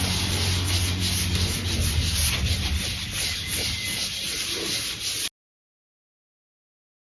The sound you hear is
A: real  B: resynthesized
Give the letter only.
A